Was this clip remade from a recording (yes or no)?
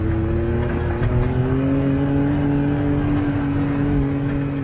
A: no